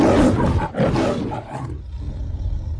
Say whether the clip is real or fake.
real